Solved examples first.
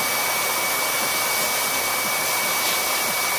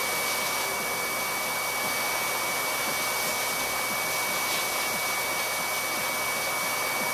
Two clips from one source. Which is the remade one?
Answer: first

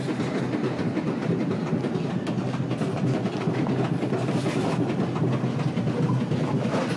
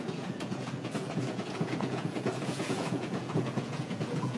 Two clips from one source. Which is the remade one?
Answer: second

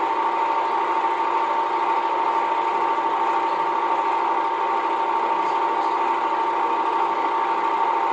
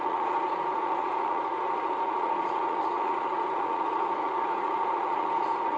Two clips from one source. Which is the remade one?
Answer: second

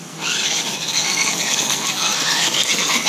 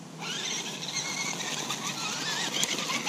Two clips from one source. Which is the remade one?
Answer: first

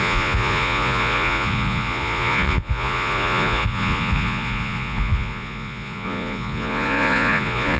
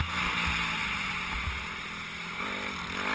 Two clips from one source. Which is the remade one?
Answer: first